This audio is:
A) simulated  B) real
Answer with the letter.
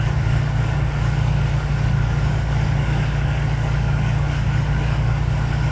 A